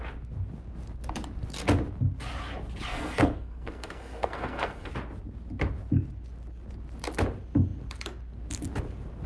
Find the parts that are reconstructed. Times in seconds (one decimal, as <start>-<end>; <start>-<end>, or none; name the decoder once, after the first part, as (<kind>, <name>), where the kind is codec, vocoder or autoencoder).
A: 2.9-4.9 (codec, SNAC)